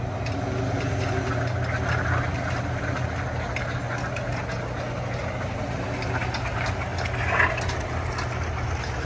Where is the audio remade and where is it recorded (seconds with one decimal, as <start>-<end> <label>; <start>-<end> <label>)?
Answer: 0.0-9.1 recorded